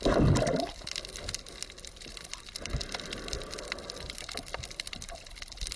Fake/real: real